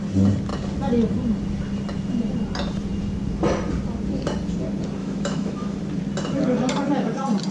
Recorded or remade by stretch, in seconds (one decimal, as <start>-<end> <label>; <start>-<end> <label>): 0.0-5.0 recorded; 5.0-5.8 remade; 5.8-7.5 recorded